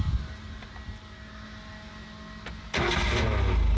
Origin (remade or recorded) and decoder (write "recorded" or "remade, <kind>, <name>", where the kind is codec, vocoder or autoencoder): recorded